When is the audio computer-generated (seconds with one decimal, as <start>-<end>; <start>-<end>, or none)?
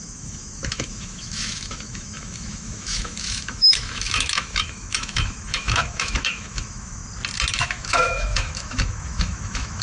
0.0-7.0; 7.5-9.8